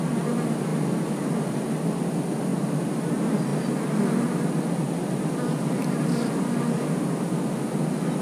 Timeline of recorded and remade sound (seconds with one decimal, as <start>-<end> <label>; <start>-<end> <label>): 0.0-8.2 recorded